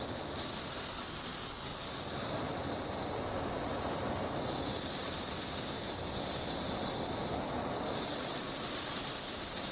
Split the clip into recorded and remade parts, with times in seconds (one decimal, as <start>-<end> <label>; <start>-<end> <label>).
0.0-9.7 recorded